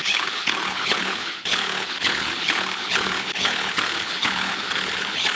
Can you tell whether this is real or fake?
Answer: fake